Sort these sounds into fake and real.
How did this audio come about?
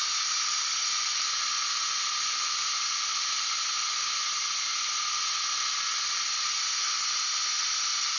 real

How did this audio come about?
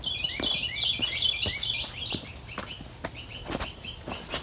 real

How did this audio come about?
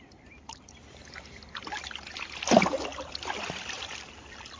fake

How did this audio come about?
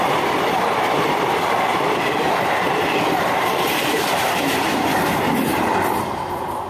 real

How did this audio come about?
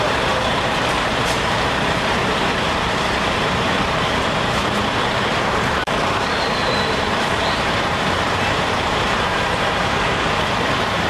fake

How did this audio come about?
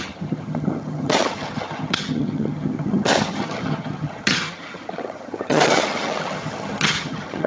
fake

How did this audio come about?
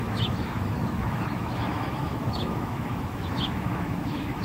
fake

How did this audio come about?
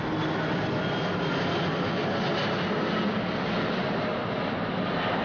real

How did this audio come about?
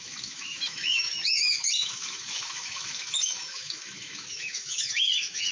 fake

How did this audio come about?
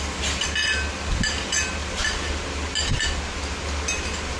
real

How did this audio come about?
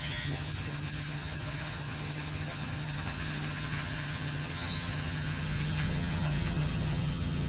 fake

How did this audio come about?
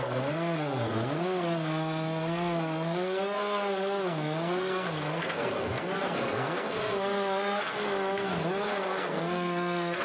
fake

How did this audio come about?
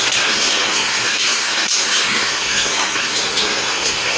fake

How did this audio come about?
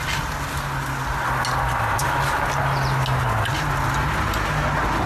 real